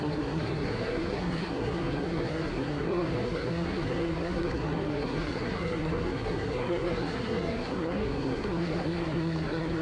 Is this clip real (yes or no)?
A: no